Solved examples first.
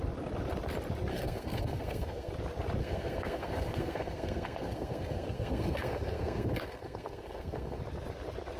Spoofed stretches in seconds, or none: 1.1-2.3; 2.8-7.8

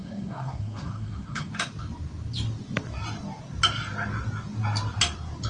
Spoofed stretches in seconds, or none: 0.0-1.5